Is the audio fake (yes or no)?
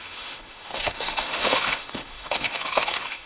yes